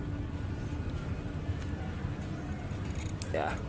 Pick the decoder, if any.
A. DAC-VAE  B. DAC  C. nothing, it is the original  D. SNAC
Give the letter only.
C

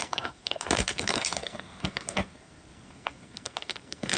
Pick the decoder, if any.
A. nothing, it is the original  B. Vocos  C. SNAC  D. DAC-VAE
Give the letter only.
C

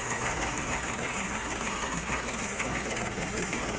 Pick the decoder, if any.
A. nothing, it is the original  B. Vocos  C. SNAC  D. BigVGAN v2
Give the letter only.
C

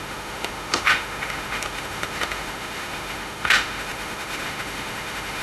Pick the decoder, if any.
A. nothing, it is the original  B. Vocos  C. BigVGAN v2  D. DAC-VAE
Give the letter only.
D